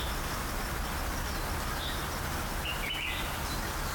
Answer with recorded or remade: recorded